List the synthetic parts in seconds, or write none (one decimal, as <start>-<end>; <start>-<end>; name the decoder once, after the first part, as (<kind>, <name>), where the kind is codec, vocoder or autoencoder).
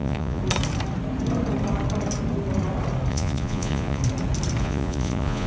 0.0-0.4 (vocoder, Vocos); 3.1-4.0; 4.6-5.5